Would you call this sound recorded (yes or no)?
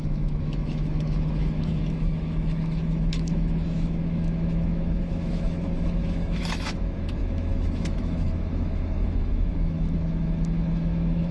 no